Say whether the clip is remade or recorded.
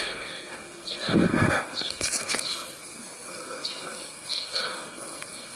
remade